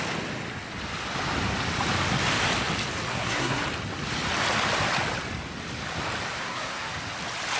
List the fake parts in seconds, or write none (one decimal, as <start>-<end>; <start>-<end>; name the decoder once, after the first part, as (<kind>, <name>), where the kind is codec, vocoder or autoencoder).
3.1-3.6 (codec, SNAC); 6.4-6.9